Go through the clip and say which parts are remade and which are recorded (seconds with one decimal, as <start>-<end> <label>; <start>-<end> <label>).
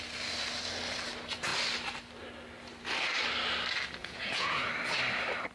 0.0-4.0 recorded; 4.0-4.7 remade; 4.7-5.5 recorded